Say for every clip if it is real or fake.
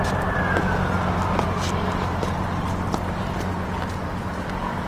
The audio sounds real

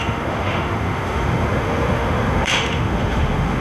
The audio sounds fake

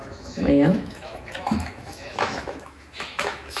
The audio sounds fake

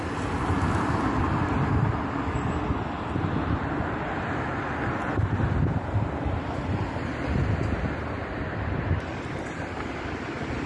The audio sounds real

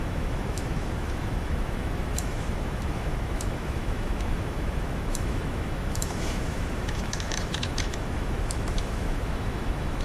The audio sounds fake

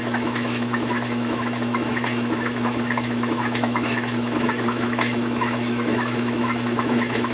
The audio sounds fake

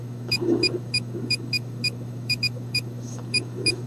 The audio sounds fake